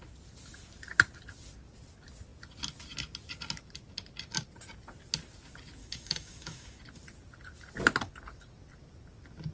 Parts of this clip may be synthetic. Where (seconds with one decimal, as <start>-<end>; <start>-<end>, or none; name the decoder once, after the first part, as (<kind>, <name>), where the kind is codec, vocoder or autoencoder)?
5.8-6.8 (autoencoder, DAC-VAE)